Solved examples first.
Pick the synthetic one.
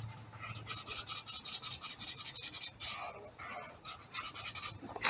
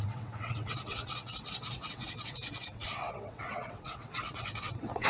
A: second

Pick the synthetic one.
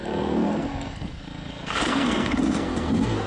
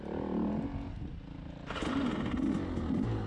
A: first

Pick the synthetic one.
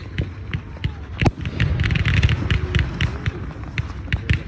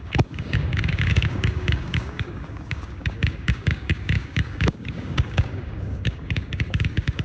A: second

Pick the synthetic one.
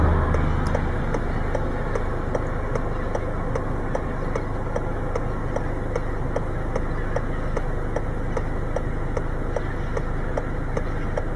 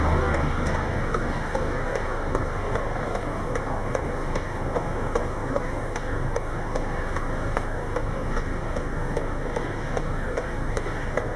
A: second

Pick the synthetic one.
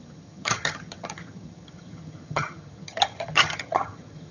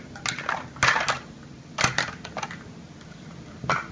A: first